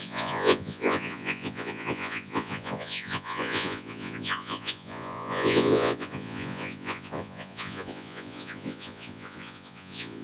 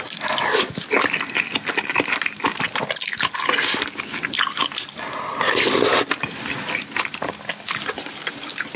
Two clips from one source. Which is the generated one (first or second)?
first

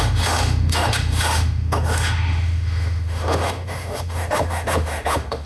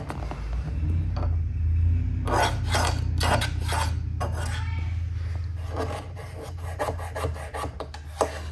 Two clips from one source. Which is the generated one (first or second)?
first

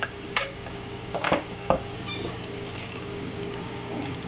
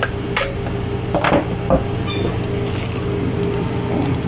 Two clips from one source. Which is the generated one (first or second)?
first